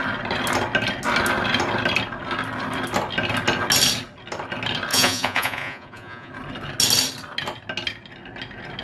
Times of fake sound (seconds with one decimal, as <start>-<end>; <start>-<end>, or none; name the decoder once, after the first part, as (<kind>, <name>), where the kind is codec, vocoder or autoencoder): 4.9-6.3 (vocoder, Vocos)

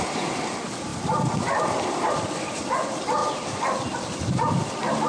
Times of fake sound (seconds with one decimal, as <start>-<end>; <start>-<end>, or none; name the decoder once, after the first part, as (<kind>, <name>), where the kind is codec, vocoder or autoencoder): 0.0-3.2 (vocoder, BigVGAN v2); 4.5-5.1